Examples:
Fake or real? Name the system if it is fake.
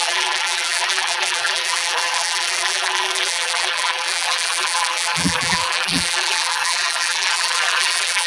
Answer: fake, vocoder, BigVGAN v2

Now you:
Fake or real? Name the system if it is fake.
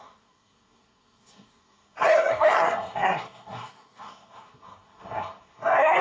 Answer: fake, codec, SNAC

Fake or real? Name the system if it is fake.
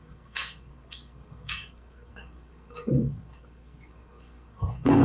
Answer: fake, codec, SNAC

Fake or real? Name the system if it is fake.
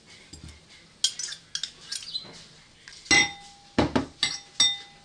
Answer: real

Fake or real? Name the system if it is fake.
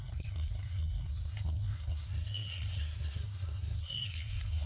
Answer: fake, codec, SNAC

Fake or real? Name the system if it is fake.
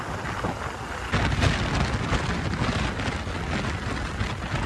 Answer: real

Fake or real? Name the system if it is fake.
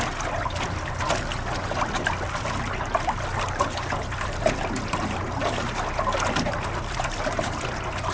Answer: real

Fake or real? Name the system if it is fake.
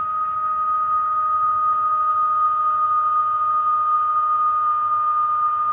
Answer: real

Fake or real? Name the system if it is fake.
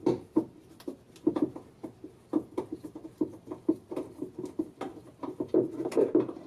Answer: real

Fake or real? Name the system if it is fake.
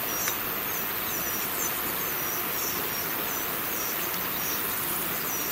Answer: real